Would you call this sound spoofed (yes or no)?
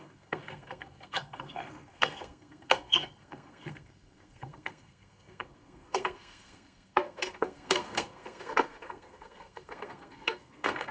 yes